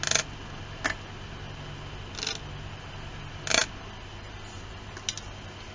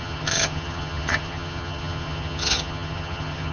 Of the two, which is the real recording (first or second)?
first